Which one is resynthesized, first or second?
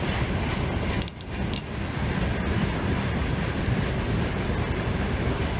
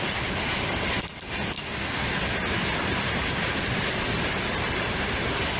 second